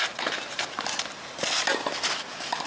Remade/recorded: recorded